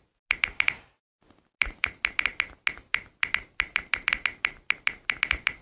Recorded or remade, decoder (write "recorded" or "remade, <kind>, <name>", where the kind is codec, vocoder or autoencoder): recorded